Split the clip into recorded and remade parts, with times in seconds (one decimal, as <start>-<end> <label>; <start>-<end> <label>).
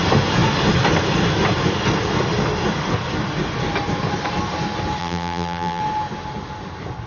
0.0-5.0 recorded; 5.0-5.8 remade; 5.8-7.1 recorded